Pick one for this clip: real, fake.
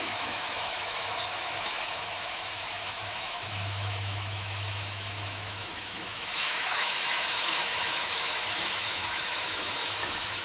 fake